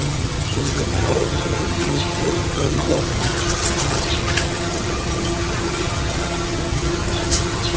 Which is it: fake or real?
fake